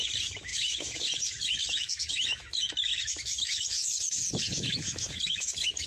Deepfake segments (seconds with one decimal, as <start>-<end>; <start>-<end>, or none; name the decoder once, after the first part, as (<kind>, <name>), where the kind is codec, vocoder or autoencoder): 0.0-5.9 (autoencoder, DAC-VAE)